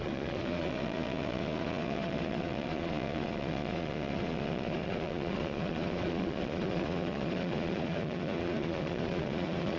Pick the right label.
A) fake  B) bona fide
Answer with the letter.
A